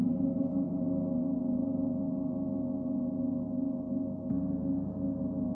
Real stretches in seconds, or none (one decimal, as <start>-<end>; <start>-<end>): 0.8-5.5